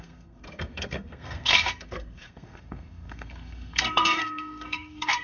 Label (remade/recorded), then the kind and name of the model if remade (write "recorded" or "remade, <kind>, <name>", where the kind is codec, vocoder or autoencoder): remade, codec, SNAC